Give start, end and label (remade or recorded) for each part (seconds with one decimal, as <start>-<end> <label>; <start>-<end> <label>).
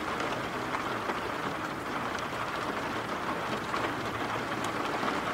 0.0-5.3 recorded